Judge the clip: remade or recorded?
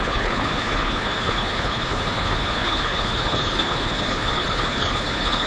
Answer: remade